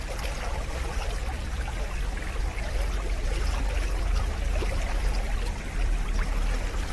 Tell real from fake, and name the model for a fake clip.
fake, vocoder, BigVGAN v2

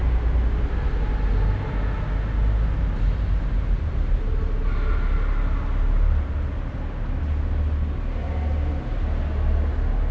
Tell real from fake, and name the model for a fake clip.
real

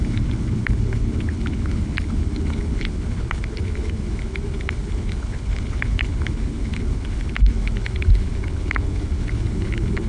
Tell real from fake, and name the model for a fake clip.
fake, codec, HILCodec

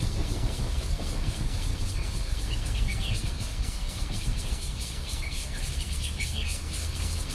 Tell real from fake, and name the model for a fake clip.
fake, codec, SNAC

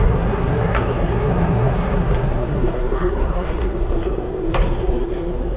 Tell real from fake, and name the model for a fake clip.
fake, codec, SNAC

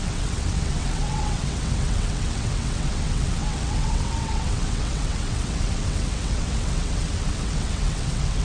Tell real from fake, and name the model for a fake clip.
fake, vocoder, WaveNeXt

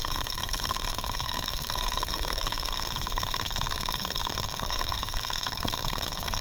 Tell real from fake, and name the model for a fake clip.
fake, codec, SNAC